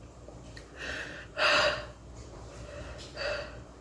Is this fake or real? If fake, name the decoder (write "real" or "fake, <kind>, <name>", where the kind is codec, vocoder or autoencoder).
fake, vocoder, BigVGAN v2